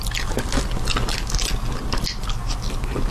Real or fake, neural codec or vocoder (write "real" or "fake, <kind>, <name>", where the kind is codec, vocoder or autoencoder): real